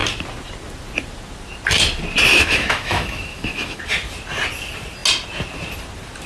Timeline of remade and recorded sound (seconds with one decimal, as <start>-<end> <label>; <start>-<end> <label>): 0.0-2.3 recorded; 2.3-3.8 remade; 3.8-6.3 recorded